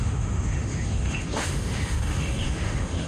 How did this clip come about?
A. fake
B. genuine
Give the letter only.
A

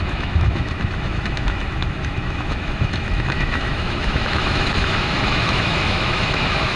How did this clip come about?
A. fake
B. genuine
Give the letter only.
A